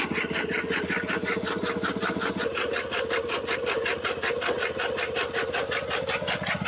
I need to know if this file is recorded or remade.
recorded